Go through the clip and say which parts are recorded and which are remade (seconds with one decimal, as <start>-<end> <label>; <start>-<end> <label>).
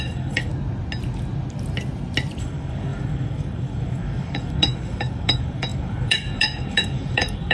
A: 0.0-0.5 remade; 0.5-2.4 recorded; 2.4-7.5 remade